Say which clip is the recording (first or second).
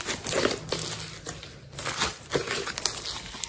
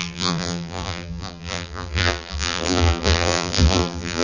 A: first